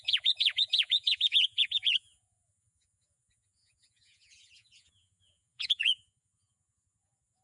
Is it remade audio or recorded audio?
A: remade